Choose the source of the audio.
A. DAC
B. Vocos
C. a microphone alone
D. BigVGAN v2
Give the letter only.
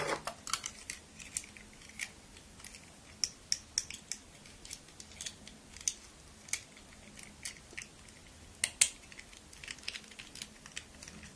C